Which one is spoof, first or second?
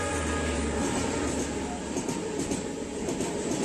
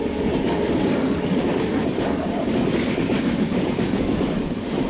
second